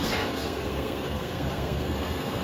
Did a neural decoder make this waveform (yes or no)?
yes